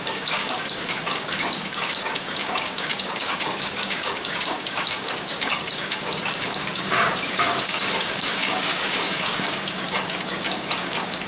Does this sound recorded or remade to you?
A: remade